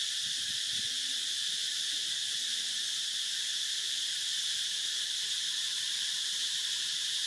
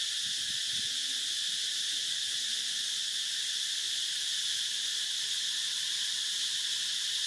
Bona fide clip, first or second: second